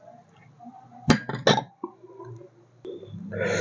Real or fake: real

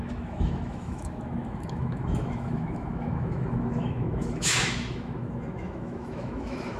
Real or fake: fake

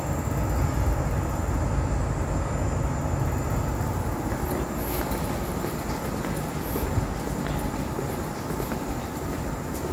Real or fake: real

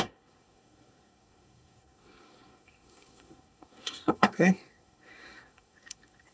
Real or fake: fake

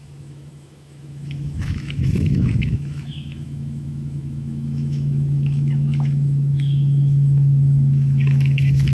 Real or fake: fake